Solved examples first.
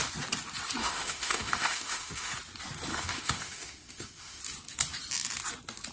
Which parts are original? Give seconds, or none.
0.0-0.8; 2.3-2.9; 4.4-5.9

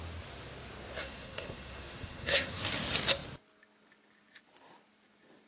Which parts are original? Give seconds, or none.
0.0-1.0; 2.6-5.5

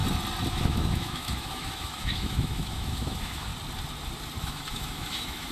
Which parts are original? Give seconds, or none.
0.0-0.5; 3.5-4.4

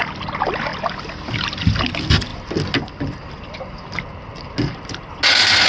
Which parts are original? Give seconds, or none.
0.0-5.7

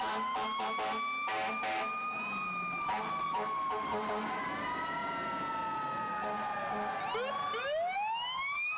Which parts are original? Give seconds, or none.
0.0-8.8